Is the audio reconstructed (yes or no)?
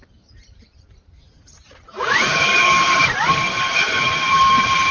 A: yes